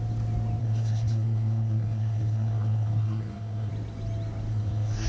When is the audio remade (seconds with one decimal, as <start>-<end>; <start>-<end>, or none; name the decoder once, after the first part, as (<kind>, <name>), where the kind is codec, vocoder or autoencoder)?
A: 0.6-3.7 (codec, SNAC); 4.5-5.1